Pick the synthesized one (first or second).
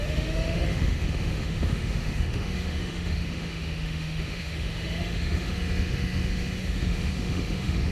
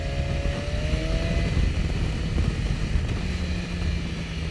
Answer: first